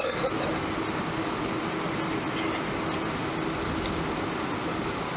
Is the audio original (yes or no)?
yes